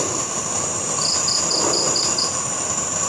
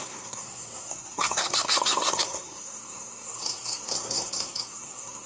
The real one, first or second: first